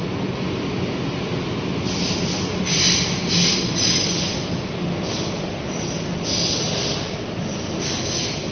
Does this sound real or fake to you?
real